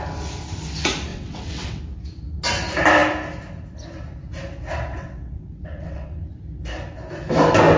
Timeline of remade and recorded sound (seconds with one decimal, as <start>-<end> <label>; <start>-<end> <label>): 0.0-1.1 recorded; 1.1-1.8 remade; 1.8-4.9 recorded; 4.9-6.3 remade; 6.3-7.8 recorded

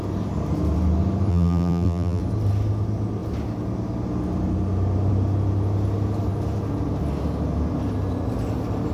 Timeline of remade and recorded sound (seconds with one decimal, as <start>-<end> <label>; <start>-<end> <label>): 0.0-1.3 recorded; 1.3-2.2 remade; 2.2-8.9 recorded

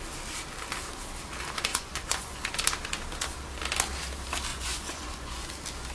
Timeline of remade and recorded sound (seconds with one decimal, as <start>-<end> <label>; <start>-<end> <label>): 0.0-1.7 recorded; 1.7-2.4 remade; 2.4-4.5 recorded; 4.5-5.5 remade; 5.5-5.9 recorded

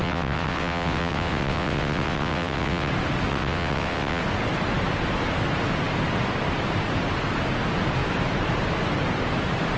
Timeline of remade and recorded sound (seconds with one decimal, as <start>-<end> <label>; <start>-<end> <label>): 0.0-2.9 remade; 2.9-3.3 recorded; 3.3-4.2 remade; 4.2-9.8 recorded

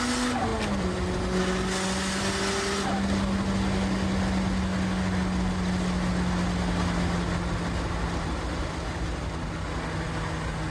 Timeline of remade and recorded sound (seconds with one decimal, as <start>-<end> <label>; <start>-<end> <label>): 0.0-10.7 recorded

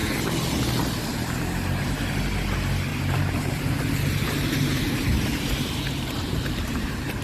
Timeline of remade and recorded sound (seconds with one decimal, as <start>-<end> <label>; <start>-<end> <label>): 0.0-2.9 recorded; 2.9-7.2 remade